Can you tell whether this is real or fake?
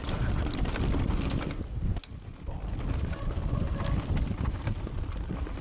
real